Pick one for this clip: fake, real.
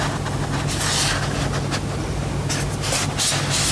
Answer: real